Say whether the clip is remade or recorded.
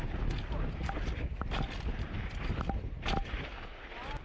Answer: recorded